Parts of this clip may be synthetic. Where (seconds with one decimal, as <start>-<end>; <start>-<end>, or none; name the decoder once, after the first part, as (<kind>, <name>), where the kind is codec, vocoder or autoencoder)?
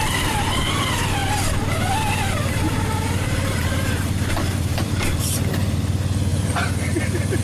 0.0-1.2 (vocoder, BigVGAN v2); 2.3-7.4